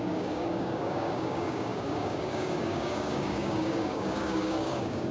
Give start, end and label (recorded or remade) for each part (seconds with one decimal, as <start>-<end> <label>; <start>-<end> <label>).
0.0-5.1 remade